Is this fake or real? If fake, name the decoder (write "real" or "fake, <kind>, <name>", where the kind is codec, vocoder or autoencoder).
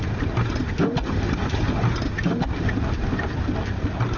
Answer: real